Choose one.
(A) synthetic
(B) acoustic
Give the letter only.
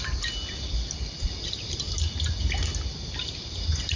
B